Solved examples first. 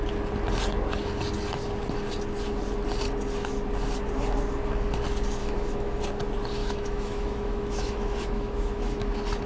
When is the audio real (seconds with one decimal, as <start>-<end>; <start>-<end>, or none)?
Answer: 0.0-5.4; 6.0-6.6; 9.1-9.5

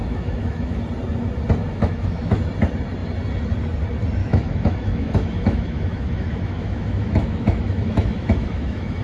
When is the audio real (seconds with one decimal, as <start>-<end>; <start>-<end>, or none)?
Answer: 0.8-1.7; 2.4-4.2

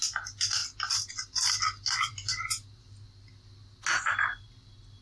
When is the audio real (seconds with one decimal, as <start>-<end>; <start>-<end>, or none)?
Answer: 0.0-5.0